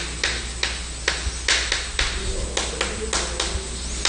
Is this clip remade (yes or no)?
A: no